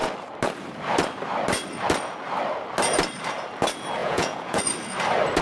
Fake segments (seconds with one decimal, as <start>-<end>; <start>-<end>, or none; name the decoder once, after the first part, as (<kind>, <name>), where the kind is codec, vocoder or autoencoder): 4.0-4.6 (vocoder, Vocos)

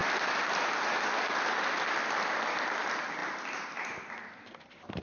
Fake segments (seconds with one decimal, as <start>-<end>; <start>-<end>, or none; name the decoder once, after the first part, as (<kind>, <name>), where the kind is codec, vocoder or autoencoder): 2.3-5.0 (vocoder, BigVGAN v2)